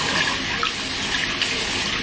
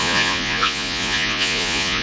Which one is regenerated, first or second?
second